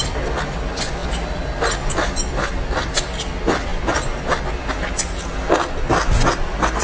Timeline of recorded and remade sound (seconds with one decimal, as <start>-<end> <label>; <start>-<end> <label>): 0.0-6.8 recorded